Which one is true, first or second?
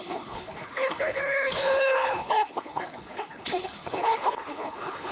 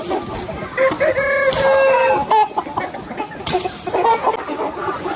second